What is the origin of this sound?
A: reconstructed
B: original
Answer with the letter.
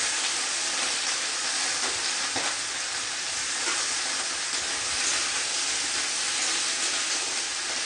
B